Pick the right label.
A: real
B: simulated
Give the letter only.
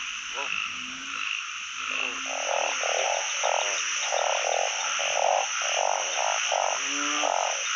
A